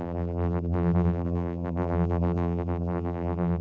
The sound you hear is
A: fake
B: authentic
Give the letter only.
A